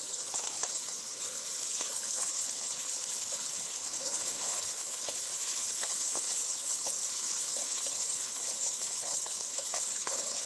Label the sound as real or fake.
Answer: fake